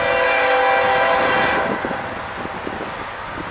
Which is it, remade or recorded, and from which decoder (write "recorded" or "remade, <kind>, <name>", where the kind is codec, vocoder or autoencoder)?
recorded